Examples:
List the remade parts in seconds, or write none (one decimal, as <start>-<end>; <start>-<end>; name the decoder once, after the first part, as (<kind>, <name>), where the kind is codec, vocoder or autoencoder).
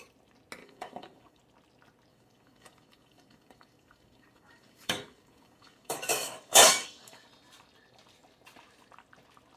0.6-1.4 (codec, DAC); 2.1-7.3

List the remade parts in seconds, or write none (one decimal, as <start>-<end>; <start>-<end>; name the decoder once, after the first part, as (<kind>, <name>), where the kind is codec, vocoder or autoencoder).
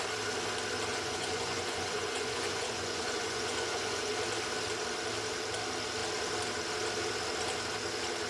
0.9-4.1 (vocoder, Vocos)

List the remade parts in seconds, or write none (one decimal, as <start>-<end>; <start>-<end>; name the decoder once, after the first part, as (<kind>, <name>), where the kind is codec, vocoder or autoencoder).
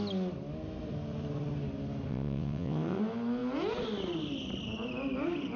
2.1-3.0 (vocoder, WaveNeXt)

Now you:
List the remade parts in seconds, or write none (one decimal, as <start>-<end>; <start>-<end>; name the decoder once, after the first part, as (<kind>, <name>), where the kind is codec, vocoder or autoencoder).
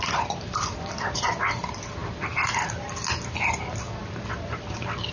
0.0-4.0 (vocoder, BigVGAN v2)